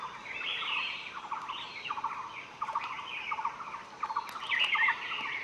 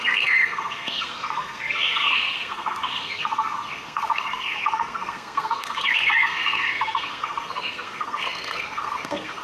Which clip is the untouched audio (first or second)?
first